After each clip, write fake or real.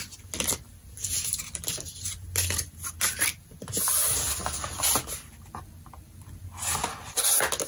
real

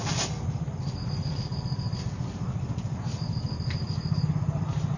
real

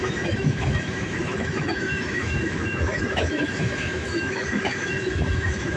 fake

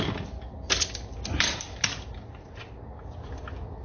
real